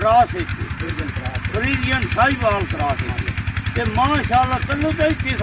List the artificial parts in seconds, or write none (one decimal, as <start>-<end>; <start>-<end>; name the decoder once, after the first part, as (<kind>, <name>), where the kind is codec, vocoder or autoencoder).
0.5-1.1 (vocoder, Vocos)